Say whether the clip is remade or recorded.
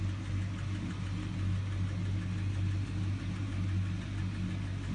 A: recorded